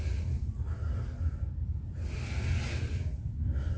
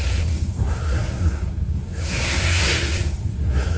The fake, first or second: second